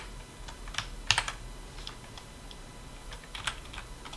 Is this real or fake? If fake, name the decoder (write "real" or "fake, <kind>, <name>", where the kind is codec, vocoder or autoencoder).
real